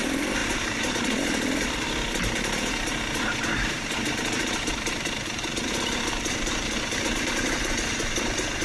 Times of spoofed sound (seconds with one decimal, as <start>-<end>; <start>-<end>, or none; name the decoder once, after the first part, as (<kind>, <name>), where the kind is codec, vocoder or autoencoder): 0.4-2.2 (vocoder, BigVGAN v2); 4.4-7.6

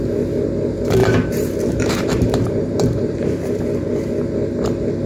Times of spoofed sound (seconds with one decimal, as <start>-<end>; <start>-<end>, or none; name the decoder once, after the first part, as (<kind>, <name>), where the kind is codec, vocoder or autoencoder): 1.0-3.6 (vocoder, BigVGAN v2)

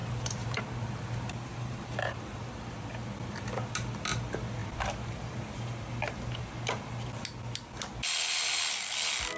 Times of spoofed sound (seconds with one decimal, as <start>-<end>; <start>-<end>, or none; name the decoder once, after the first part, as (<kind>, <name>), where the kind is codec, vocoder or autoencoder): 0.0-0.6 (vocoder, BigVGAN v2); 1.5-2.4